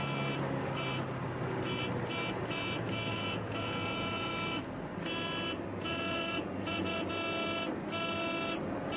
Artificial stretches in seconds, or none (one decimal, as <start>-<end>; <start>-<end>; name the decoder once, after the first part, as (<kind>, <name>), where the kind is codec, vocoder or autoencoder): 3.1-4.3 (vocoder, Vocos); 5.7-7.1